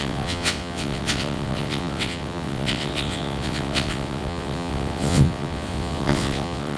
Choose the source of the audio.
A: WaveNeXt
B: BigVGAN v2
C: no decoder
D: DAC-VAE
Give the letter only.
A